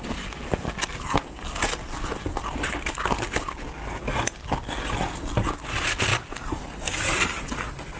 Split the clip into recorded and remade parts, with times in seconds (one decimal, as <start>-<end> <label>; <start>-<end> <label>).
0.0-8.0 recorded